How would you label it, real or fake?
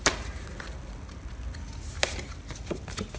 fake